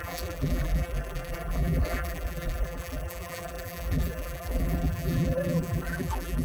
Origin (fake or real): fake